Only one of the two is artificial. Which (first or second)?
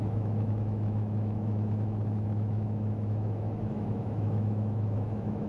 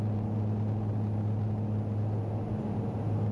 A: first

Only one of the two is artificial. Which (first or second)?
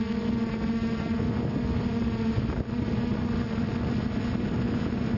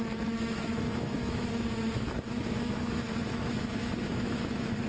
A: second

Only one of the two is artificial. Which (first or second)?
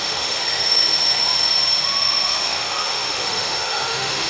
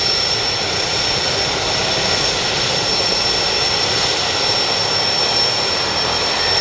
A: first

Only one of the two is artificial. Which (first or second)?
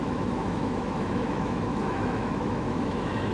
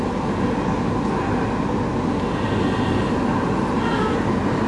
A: first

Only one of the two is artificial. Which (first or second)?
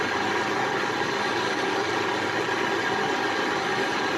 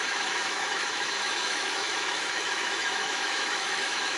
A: second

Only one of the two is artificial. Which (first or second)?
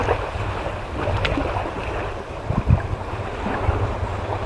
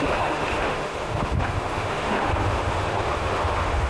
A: second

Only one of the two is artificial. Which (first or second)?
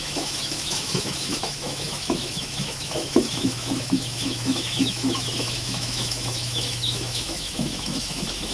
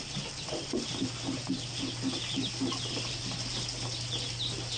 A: first